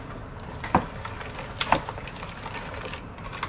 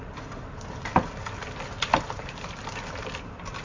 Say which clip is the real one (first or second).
first